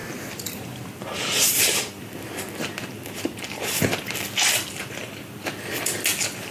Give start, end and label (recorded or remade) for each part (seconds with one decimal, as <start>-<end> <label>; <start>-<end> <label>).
0.0-6.5 recorded